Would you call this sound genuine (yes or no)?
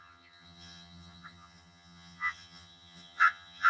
no